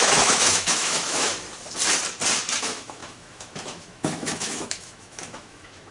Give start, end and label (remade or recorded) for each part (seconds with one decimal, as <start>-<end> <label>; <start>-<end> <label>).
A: 0.0-1.3 remade; 1.3-2.6 recorded; 2.6-5.9 remade